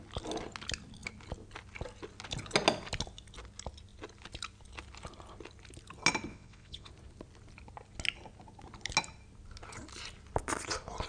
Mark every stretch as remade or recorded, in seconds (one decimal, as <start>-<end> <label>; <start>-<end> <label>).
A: 0.0-6.3 recorded; 6.3-6.9 remade; 6.9-11.1 recorded